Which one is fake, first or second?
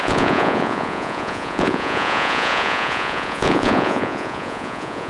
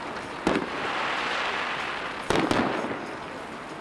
first